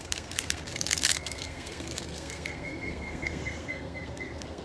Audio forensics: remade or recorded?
remade